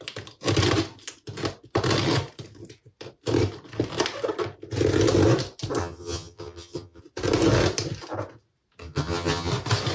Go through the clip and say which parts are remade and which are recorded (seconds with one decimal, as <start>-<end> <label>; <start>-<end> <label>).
0.0-5.8 recorded; 5.8-7.0 remade; 7.0-8.8 recorded; 8.8-9.5 remade; 9.5-9.9 recorded

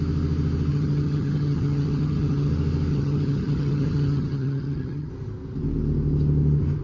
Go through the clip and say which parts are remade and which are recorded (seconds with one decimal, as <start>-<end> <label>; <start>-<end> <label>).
0.0-0.7 recorded; 0.7-2.5 remade; 2.5-2.9 recorded; 2.9-5.1 remade; 5.1-6.8 recorded

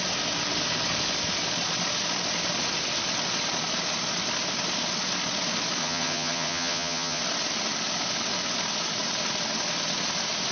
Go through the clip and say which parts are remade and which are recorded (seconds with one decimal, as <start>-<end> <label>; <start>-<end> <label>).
0.0-5.8 recorded; 5.8-7.2 remade; 7.2-10.5 recorded

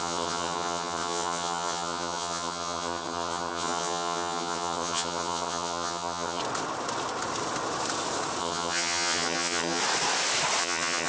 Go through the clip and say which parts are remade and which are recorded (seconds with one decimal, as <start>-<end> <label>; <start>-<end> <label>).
0.0-6.4 remade; 6.4-8.4 recorded; 8.4-9.8 remade; 9.8-10.6 recorded; 10.6-11.1 remade

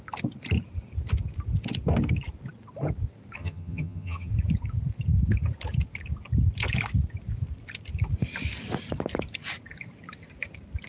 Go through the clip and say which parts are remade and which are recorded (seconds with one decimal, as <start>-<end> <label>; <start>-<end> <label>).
0.0-3.4 recorded; 3.4-4.3 remade; 4.3-10.9 recorded

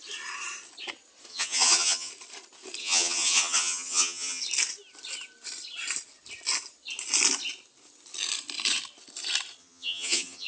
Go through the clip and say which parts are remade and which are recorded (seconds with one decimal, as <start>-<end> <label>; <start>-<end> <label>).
0.0-1.3 recorded; 1.3-2.1 remade; 2.1-2.8 recorded; 2.8-4.4 remade; 4.4-9.6 recorded; 9.6-10.5 remade